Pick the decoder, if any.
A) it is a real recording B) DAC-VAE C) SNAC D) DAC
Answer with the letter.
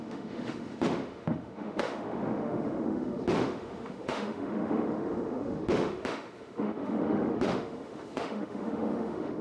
B